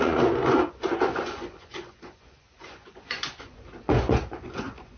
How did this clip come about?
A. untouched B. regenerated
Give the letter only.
B